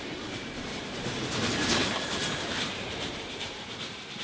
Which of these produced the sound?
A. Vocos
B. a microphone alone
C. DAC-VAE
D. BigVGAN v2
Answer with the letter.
D